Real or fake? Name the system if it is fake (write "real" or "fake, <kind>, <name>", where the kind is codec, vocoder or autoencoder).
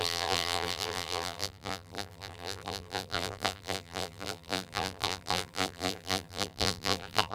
fake, vocoder, BigVGAN v2